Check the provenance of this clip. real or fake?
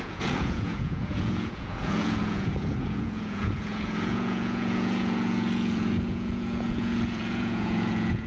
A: fake